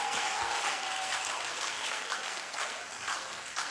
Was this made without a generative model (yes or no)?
no